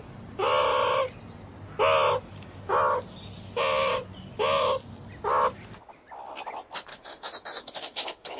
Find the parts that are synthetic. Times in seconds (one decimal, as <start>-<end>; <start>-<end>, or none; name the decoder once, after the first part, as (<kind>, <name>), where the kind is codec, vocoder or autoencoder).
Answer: 6.9-8.4 (autoencoder, DAC-VAE)